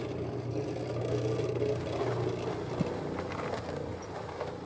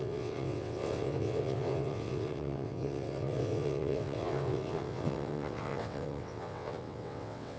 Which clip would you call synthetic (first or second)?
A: second